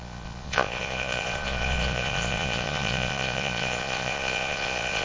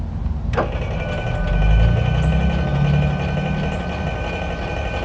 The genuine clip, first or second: second